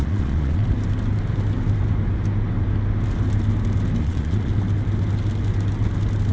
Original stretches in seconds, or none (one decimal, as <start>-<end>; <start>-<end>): 0.6-4.0; 4.5-6.3

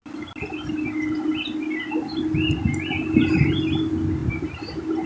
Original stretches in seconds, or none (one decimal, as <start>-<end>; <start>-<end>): 0.0-5.1

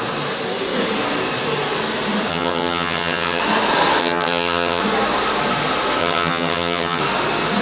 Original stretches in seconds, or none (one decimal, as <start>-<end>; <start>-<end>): 0.0-2.3; 3.4-4.0; 4.8-6.0; 7.0-7.6

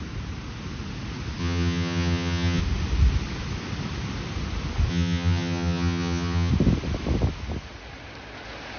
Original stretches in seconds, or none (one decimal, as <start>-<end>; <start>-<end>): 0.0-1.4; 2.6-4.9; 6.5-8.8